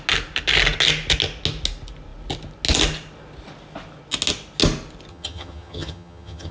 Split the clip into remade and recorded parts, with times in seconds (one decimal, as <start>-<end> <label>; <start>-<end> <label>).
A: 0.0-5.1 recorded; 5.1-6.5 remade